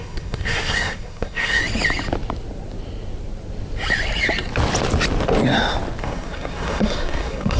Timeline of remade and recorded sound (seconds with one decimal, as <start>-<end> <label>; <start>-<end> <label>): 0.0-1.6 remade; 1.6-6.0 recorded; 6.0-7.6 remade